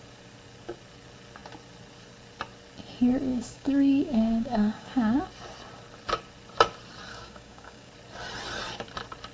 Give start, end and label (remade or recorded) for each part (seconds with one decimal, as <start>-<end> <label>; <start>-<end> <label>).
0.0-3.3 recorded; 3.3-5.2 remade; 5.2-7.1 recorded; 7.1-7.9 remade; 7.9-9.3 recorded